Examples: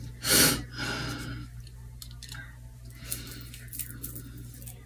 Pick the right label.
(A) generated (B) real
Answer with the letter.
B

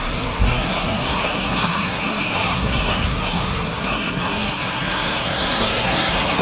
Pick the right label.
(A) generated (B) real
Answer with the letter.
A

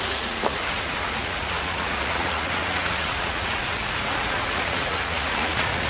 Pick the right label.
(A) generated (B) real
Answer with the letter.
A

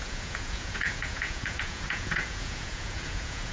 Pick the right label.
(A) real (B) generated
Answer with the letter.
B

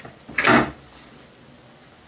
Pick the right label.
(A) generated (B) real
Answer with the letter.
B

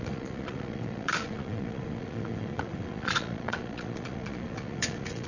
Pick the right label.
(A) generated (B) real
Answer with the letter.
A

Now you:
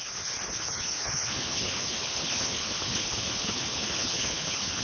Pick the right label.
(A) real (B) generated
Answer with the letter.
B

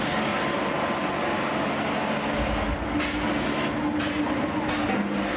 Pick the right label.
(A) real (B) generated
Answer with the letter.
A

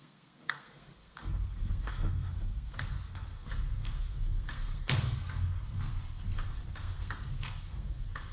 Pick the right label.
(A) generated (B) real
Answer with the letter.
A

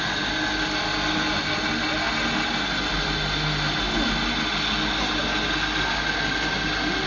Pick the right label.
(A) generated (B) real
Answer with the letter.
B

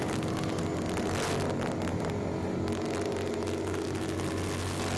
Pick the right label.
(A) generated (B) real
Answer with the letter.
B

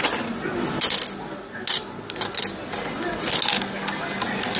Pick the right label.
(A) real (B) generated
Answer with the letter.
A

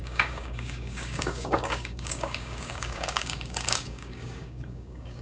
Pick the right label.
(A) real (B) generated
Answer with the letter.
B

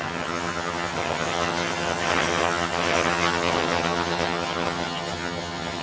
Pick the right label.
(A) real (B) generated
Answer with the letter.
B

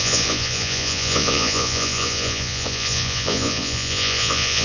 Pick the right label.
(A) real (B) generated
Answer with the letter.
B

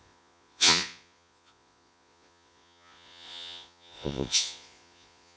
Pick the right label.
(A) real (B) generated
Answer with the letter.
B